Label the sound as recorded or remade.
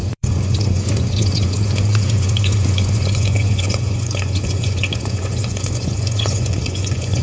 remade